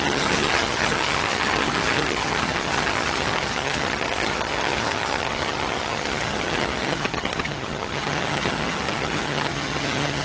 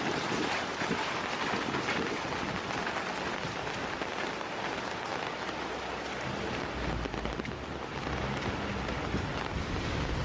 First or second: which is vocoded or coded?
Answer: first